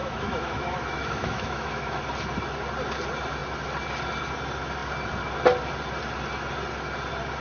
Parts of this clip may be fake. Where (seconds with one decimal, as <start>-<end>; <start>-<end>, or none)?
0.0-2.0